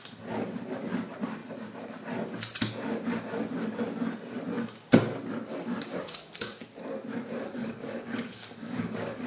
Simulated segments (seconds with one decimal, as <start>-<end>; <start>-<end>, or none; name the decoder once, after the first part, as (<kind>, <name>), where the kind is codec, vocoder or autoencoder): 5.5-6.8 (codec, DAC); 7.6-9.3